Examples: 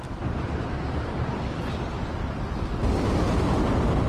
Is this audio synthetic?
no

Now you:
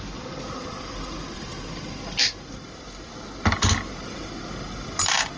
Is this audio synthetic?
no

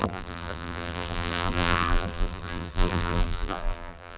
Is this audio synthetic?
yes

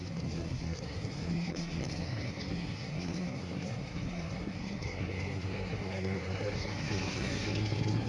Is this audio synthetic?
yes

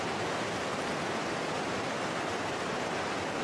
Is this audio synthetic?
no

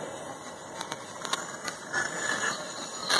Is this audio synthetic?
no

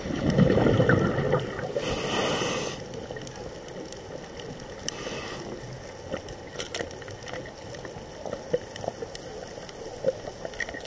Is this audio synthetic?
no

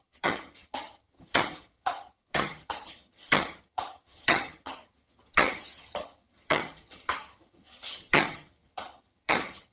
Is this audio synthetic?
yes